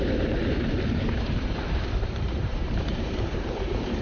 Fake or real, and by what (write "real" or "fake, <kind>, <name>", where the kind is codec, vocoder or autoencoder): fake, vocoder, BigVGAN v2